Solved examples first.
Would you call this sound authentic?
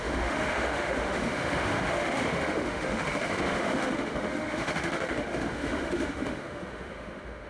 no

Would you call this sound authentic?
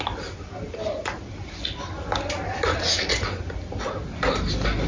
yes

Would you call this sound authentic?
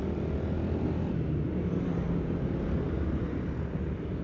yes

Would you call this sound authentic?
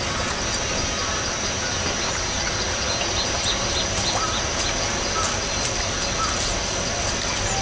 yes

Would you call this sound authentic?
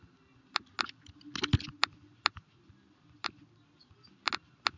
yes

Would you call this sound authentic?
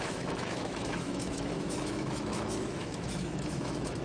no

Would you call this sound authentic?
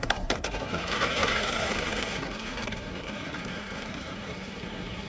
no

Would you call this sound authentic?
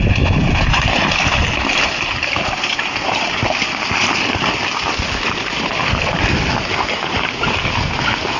yes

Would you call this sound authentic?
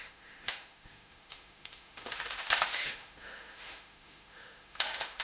no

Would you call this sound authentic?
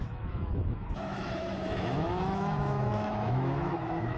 no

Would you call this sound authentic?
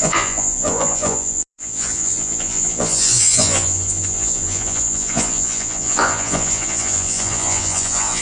no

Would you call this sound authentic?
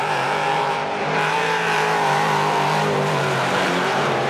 no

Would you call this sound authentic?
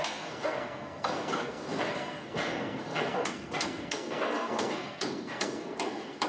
no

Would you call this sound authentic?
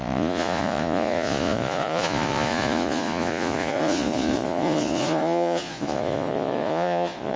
no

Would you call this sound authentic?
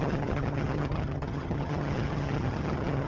no